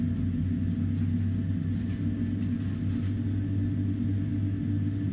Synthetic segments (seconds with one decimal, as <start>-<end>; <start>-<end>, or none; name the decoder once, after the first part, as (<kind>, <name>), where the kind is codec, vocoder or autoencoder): none